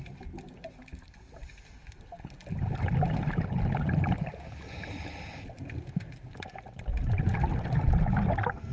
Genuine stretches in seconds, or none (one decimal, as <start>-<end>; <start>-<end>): 0.0-8.7